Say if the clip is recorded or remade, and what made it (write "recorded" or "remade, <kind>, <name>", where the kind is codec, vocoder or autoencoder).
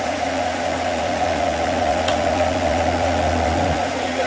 remade, vocoder, Vocos